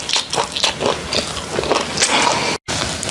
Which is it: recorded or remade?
recorded